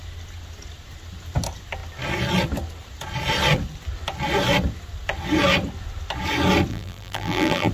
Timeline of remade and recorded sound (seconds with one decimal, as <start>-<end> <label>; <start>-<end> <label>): 0.0-6.7 recorded; 6.7-7.7 remade